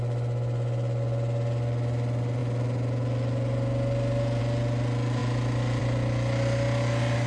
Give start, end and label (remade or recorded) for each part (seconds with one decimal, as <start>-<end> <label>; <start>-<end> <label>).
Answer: 0.0-7.3 recorded